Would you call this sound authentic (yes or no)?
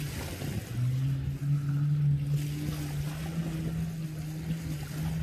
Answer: yes